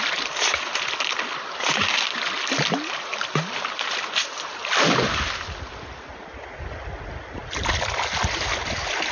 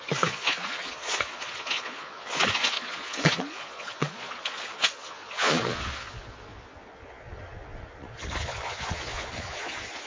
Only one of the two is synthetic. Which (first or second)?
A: second